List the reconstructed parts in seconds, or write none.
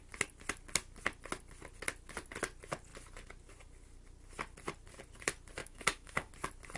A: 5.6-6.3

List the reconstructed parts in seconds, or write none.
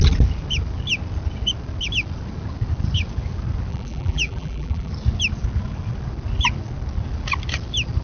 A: 3.7-4.9